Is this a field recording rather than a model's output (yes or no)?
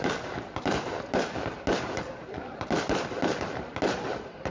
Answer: yes